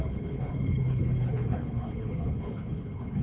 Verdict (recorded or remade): remade